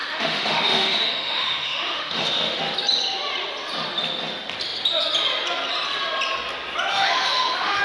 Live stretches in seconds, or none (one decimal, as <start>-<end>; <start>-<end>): 2.6-6.9